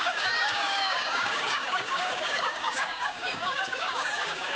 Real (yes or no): no